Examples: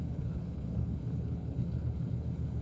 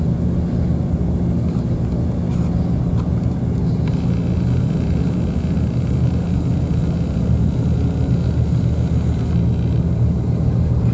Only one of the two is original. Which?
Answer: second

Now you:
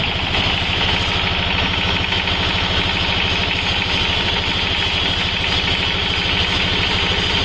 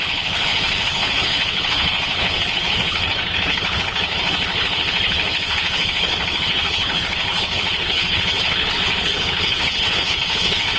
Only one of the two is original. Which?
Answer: first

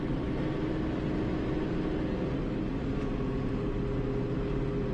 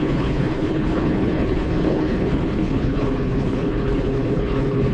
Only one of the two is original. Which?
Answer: first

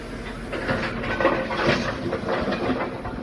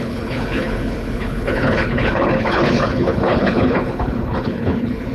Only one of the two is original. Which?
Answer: first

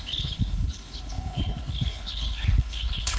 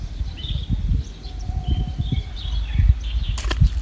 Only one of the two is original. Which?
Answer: second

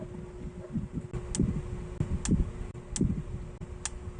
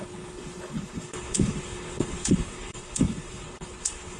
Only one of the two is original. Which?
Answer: first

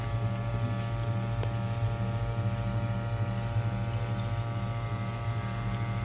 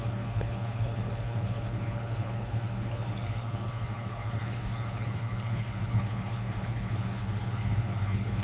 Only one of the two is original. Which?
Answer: first